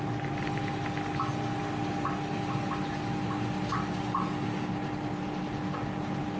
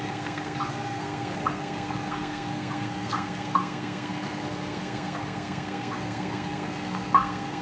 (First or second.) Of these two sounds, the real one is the first